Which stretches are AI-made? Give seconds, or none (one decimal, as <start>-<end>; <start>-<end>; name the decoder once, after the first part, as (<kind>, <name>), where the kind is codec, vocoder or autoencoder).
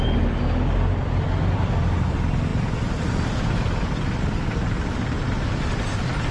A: none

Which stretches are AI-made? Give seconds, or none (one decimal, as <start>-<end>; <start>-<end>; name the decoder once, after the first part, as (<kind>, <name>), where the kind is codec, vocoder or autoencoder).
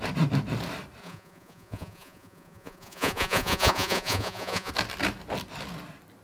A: 1.0-4.7 (vocoder, Vocos)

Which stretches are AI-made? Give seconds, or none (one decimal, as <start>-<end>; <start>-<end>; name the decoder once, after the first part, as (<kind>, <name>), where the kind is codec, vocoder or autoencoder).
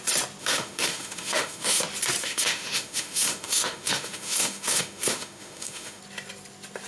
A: 0.4-1.8 (autoencoder, DAC-VAE); 2.2-6.0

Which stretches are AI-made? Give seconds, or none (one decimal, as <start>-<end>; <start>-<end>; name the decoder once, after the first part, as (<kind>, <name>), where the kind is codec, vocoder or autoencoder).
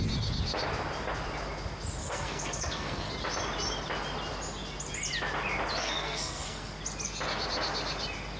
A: 2.0-3.1 (codec, SNAC); 5.8-6.8